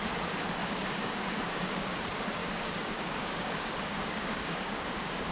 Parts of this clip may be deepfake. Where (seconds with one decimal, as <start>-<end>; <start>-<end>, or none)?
0.6-2.0; 2.4-5.3